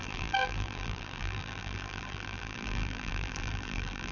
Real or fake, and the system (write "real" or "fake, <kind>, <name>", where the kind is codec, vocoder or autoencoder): fake, vocoder, BigVGAN v2